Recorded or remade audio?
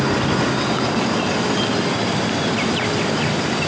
recorded